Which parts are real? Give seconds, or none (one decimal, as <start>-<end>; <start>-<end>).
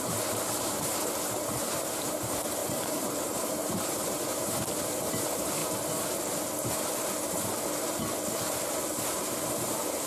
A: 5.6-9.0